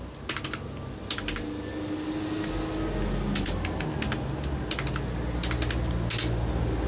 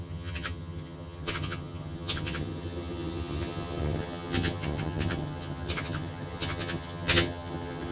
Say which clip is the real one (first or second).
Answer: first